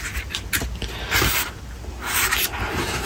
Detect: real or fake real